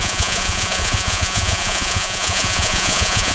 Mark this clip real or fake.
fake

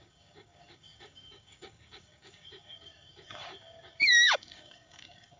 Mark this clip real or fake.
fake